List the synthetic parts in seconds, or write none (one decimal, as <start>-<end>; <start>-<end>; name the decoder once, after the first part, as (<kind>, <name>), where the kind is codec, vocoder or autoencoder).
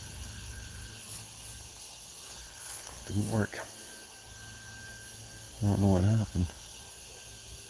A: 0.0-1.2 (codec, HILCodec); 2.3-3.1; 6.0-6.8